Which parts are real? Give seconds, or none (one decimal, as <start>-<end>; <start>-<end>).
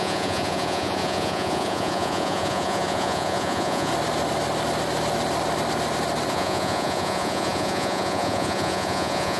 3.9-6.3